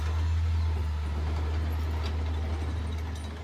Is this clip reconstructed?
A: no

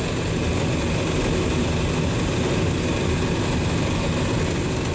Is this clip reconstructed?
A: no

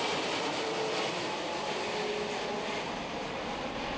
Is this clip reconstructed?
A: no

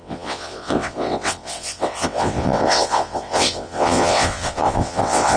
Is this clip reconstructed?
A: yes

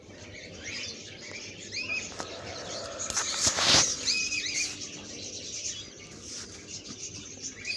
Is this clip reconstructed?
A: no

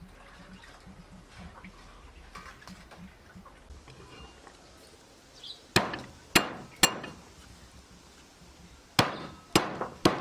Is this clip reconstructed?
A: no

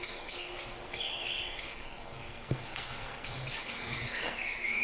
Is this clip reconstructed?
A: yes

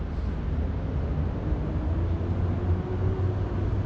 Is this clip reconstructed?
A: no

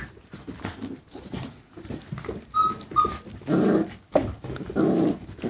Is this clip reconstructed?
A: no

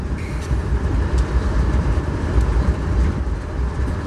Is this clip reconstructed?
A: yes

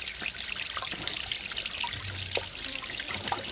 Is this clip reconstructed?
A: no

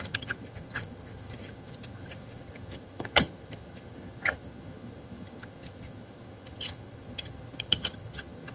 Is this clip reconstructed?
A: yes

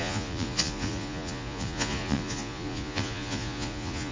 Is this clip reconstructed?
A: yes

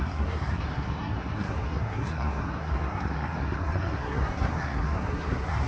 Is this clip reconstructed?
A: yes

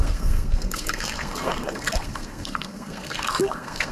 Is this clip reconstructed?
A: yes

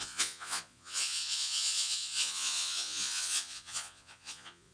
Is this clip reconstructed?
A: yes